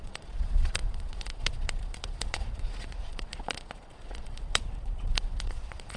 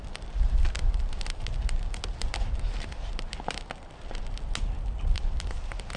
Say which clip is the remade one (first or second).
first